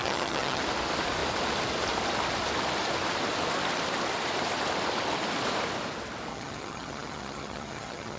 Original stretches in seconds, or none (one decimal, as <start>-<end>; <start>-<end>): 0.6-6.3